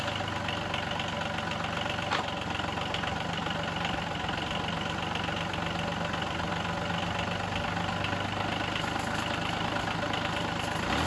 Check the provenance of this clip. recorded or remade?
recorded